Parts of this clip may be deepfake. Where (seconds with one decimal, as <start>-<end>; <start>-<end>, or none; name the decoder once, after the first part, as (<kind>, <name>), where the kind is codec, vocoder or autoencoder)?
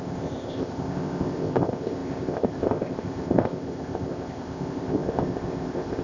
0.0-6.0 (codec, ZipCodec)